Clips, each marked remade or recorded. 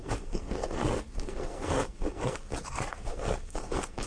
remade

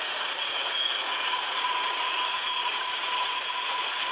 remade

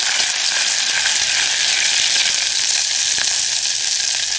recorded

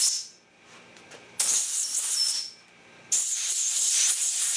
recorded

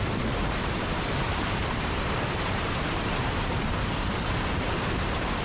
remade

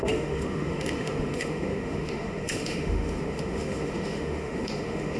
remade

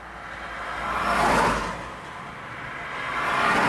recorded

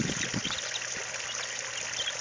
recorded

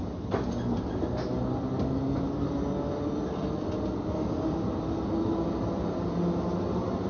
recorded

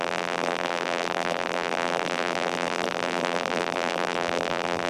remade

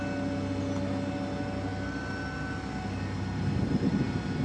recorded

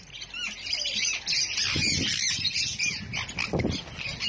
recorded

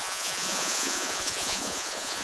remade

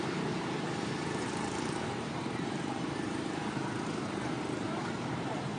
remade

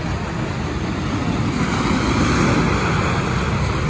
recorded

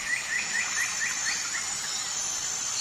recorded